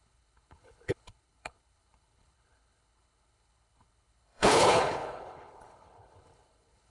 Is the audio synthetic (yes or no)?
yes